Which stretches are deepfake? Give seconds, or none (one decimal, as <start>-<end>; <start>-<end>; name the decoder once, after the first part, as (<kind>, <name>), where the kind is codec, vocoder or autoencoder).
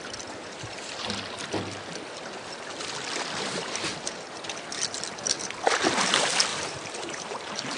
6.5-7.8 (vocoder, BigVGAN v2)